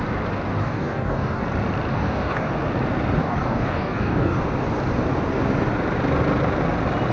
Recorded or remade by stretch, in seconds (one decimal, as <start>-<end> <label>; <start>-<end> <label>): 0.0-0.6 recorded; 0.6-1.4 remade; 1.4-1.9 recorded; 1.9-2.5 remade; 2.5-3.2 recorded; 3.2-4.4 remade; 4.4-7.1 recorded